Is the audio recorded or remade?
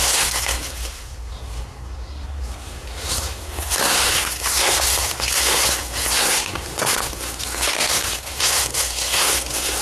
remade